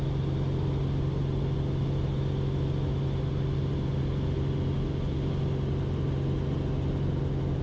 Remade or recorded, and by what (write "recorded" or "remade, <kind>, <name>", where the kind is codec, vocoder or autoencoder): recorded